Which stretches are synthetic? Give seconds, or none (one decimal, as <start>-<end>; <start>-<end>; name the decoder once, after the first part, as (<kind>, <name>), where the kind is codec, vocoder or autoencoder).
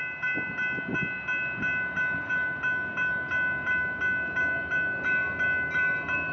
none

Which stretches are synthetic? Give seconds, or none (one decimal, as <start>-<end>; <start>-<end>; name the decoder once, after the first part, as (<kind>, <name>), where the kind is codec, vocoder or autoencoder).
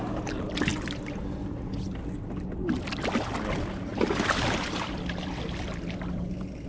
none